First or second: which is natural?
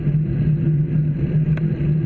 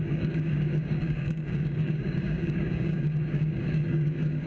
first